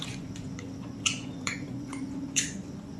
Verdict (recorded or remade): remade